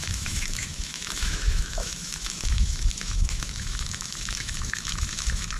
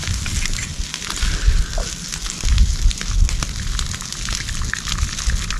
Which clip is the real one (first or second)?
second